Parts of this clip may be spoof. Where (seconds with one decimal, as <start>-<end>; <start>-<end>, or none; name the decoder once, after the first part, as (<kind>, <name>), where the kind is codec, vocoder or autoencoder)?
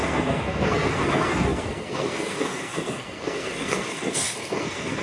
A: 0.0-5.0 (codec, SNAC)